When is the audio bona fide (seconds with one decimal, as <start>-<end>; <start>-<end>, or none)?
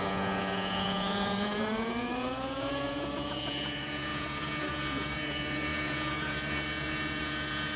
none